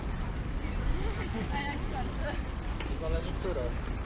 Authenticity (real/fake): real